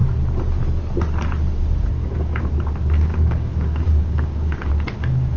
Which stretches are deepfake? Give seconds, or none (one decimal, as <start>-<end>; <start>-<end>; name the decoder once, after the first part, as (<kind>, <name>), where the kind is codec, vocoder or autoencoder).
1.9-2.4 (codec, DAC); 3.1-4.7